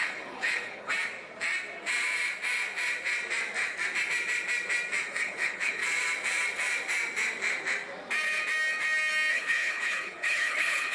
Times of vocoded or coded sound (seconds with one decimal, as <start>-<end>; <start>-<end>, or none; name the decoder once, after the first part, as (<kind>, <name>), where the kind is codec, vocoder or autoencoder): 0.0-0.9 (codec, HILCodec); 5.0-5.8; 9.3-10.9